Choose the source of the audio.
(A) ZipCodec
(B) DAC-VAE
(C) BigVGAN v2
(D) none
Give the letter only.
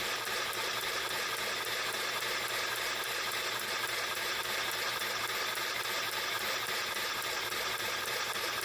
C